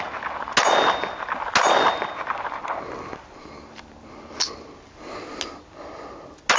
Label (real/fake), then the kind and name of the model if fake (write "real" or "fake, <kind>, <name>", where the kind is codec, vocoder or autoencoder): real